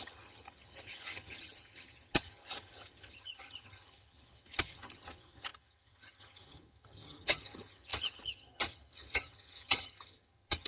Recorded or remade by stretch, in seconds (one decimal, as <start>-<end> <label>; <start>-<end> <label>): 0.0-10.7 remade